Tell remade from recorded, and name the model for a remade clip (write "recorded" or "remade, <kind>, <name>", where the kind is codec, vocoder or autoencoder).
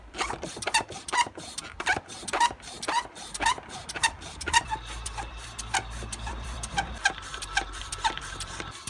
remade, vocoder, BigVGAN v2